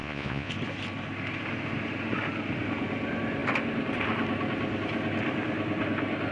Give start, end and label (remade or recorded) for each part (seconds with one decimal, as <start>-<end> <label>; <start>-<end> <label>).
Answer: 0.0-0.5 remade; 0.5-6.3 recorded